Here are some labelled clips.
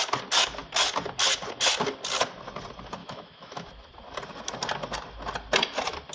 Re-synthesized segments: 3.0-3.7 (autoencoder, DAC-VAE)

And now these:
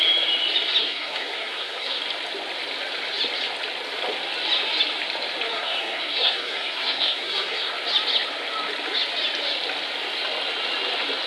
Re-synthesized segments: 0.8-2.0 (codec, SNAC); 5.5-7.7

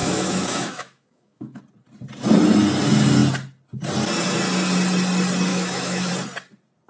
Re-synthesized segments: 0.0-1.6 (autoencoder, DAC-VAE); 5.5-6.1

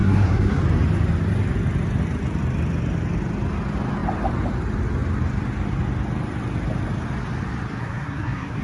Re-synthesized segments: 0.0-0.6 (codec, SNAC); 7.8-8.6

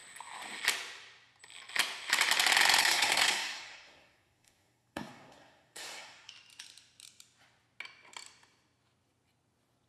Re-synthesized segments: 2.8-6.3 (codec, SNAC)